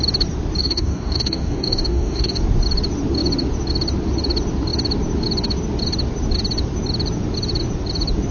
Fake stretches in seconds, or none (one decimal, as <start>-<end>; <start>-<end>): 0.6-2.4